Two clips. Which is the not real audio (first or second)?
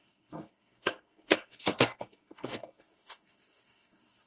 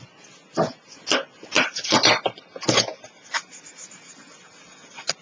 first